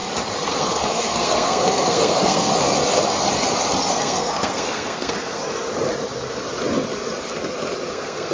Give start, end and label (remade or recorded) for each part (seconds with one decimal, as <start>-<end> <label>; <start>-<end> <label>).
0.0-0.5 recorded; 0.5-2.5 remade; 2.5-3.9 recorded; 3.9-5.4 remade; 5.4-7.9 recorded; 7.9-8.3 remade